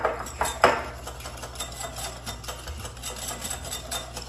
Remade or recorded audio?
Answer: recorded